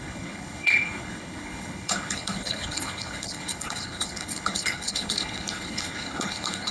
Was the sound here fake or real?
fake